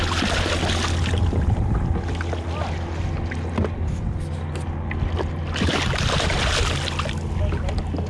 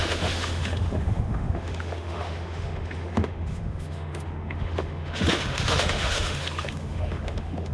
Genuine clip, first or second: first